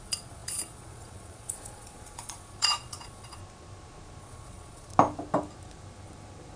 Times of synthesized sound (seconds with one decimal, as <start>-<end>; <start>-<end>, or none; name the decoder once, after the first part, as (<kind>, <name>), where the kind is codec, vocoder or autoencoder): 0.0-3.4 (vocoder, Vocos); 4.2-4.9